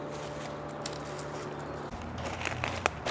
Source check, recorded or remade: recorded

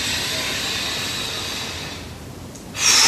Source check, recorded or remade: recorded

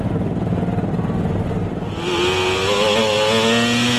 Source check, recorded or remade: recorded